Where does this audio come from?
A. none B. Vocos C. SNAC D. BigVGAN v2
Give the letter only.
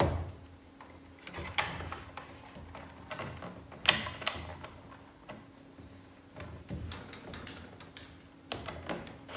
A